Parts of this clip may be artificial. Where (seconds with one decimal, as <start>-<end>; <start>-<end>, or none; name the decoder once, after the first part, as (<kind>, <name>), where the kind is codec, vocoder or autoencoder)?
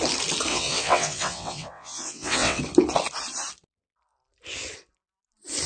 0.5-2.6 (vocoder, WaveNeXt)